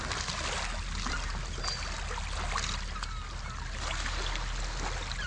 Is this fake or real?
real